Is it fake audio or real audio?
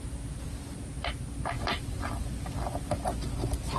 real